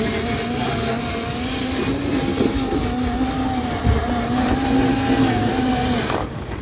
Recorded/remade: recorded